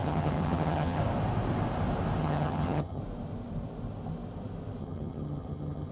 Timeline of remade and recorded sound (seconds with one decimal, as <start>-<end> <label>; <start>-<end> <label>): 0.0-1.0 remade; 1.0-2.2 recorded; 2.2-3.0 remade; 3.0-4.8 recorded; 4.8-5.9 remade